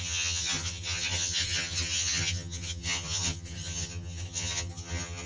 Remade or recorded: remade